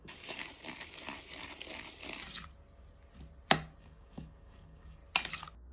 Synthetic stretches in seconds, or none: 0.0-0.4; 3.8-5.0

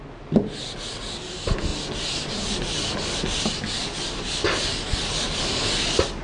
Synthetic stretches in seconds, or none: none

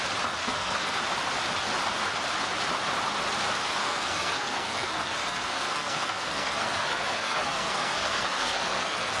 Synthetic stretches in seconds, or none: 0.4-1.0; 3.8-9.2